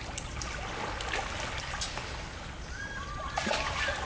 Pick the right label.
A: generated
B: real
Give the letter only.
B